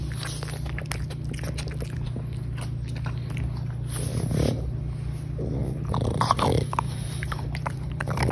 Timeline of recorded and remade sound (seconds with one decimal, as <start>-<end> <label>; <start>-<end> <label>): 0.0-5.6 recorded; 5.6-8.3 remade